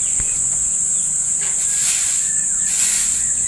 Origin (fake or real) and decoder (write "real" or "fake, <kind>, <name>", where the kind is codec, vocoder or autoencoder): fake, vocoder, Vocos